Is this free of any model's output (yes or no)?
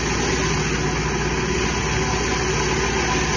yes